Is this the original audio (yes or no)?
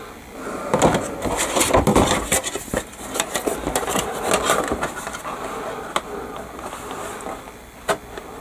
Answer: yes